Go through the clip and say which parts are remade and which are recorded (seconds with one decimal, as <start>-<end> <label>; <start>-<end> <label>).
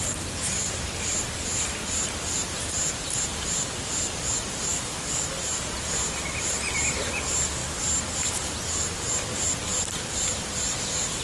0.0-4.7 recorded; 4.7-5.3 remade; 5.3-11.2 recorded